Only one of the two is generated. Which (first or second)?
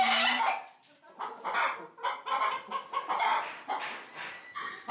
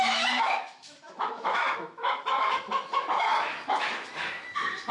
second